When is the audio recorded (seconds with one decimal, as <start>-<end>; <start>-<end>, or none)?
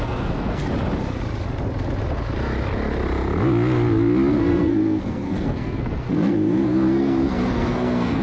0.6-4.3